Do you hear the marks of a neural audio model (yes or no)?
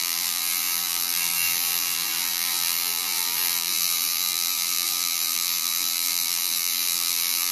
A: yes